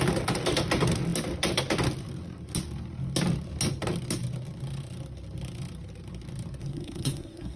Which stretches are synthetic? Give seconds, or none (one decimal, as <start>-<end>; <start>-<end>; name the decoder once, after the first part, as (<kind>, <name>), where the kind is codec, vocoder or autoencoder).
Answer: 6.6-7.6 (codec, SNAC)